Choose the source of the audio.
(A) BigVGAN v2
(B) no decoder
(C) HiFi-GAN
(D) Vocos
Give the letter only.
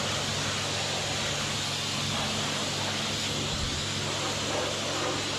B